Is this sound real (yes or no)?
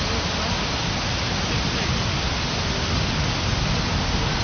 yes